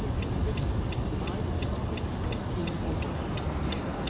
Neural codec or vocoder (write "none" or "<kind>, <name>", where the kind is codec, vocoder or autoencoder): none